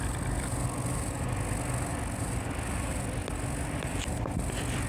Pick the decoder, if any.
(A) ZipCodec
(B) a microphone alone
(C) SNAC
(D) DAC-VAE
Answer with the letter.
B